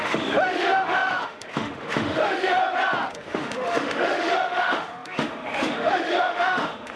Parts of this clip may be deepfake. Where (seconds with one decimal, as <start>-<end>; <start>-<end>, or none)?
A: 0.0-2.6; 3.1-7.0